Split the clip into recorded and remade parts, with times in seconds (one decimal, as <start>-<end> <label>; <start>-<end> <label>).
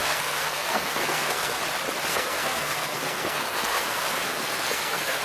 0.0-1.6 remade; 1.6-2.1 recorded; 2.1-5.2 remade